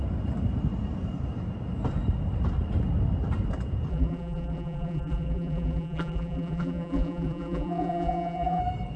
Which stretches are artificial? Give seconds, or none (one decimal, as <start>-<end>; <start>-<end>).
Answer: 3.9-8.6